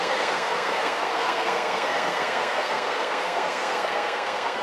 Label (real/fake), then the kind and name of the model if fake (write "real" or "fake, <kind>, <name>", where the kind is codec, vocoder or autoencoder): fake, codec, SNAC